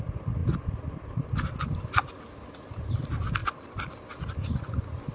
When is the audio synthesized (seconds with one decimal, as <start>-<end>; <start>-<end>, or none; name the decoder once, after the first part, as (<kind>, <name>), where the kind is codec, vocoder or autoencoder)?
none